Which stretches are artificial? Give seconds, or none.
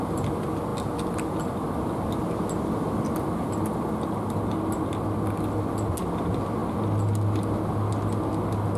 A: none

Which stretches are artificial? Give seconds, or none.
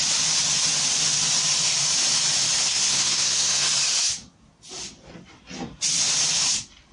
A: 2.6-3.7 (codec, SNAC)